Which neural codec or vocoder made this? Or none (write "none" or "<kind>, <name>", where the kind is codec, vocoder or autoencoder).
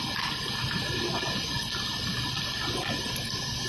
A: none